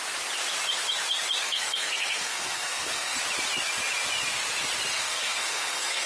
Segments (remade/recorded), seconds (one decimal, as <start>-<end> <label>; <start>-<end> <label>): 0.0-1.4 recorded; 1.4-3.2 remade; 3.2-4.9 recorded; 4.9-6.1 remade